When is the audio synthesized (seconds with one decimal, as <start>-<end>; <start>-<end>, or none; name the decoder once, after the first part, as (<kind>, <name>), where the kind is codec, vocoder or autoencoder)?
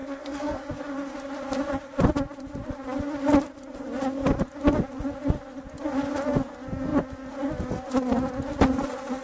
0.0-0.6 (codec, SNAC)